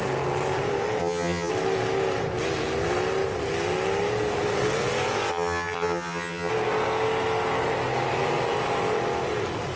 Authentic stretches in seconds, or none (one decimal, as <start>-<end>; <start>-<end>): 0.0-1.0; 1.5-5.3; 6.5-9.8